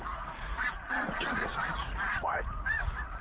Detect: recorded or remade remade